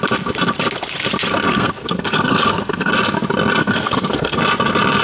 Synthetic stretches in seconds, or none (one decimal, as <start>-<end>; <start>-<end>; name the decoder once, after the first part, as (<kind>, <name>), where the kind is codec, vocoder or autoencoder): 1.5-2.9 (codec, SNAC); 3.6-4.4